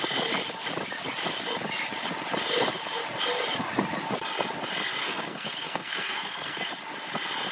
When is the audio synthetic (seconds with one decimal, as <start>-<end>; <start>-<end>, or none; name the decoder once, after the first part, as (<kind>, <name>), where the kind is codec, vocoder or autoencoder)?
5.0-6.7 (codec, SNAC)

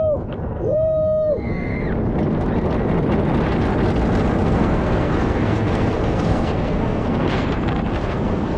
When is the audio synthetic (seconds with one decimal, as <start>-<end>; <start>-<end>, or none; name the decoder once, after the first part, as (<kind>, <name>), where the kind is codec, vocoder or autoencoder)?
0.0-1.7 (codec, SNAC); 4.4-8.6

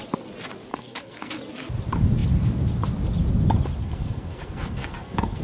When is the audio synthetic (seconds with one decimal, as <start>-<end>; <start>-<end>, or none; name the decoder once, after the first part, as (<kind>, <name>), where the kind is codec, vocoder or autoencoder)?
0.7-1.3 (codec, SNAC); 3.8-5.4

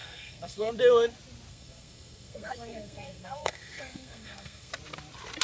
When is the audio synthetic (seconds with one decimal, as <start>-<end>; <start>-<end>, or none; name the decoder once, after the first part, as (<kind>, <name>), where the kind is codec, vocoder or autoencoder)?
0.0-0.7 (codec, SNAC); 1.5-4.7